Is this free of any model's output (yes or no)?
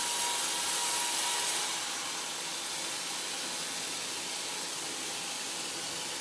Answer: yes